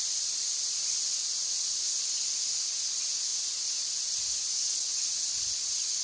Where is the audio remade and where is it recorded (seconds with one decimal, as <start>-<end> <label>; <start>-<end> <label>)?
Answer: 0.0-6.0 recorded